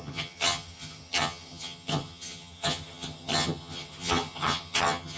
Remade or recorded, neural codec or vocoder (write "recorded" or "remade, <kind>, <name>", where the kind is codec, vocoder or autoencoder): remade, vocoder, HiFi-GAN